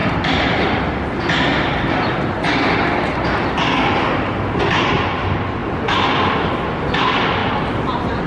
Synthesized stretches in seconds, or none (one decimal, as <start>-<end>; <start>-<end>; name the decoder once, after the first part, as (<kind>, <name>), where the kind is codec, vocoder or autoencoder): 0.0-0.8 (vocoder, BigVGAN v2); 5.6-6.5